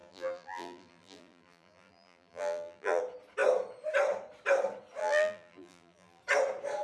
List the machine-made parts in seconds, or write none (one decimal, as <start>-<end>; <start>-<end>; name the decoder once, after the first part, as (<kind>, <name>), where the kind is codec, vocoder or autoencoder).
0.0-3.0 (vocoder, BigVGAN v2); 5.0-6.2